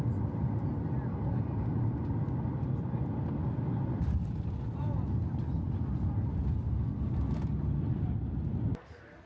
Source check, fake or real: real